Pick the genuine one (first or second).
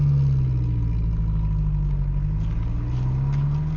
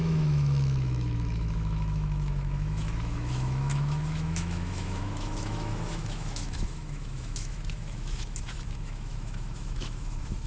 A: first